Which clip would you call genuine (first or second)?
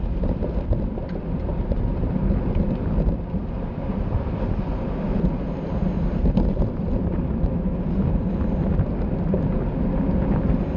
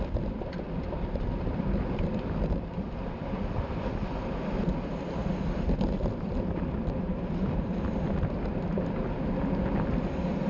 first